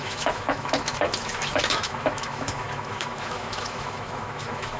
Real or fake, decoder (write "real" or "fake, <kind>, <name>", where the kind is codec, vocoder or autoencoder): fake, autoencoder, DAC-VAE